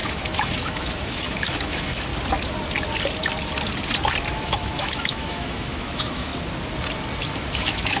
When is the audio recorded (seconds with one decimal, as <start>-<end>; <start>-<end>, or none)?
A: 2.1-4.3; 6.3-7.2